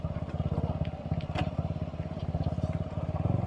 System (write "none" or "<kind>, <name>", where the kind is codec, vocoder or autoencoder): none